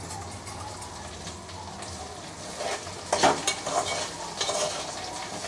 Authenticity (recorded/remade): recorded